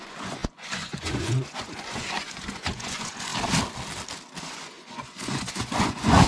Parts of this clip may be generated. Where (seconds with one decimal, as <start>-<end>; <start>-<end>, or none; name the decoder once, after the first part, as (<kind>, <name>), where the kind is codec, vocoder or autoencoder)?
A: 0.0-3.3 (vocoder, Vocos); 4.4-6.3